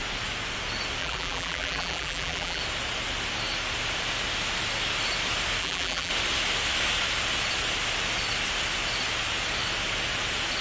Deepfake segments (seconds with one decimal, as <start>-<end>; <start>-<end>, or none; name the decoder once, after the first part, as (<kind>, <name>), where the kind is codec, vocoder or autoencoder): 1.0-2.6 (vocoder, BigVGAN v2); 5.6-6.1